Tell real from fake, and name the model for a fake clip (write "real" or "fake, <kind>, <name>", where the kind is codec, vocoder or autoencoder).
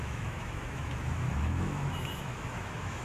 fake, autoencoder, DAC-VAE